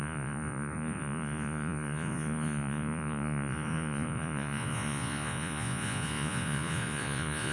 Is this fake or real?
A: fake